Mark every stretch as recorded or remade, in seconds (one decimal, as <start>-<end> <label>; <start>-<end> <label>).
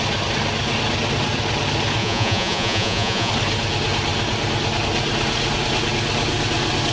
0.0-2.0 recorded; 2.0-3.3 remade; 3.3-6.9 recorded